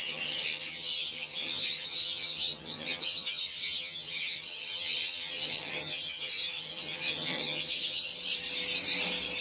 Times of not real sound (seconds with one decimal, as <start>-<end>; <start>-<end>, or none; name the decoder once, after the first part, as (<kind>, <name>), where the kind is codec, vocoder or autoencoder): 0.0-8.1 (vocoder, HiFi-GAN)